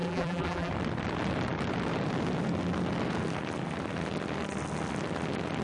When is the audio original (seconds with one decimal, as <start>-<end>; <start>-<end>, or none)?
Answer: 0.7-5.6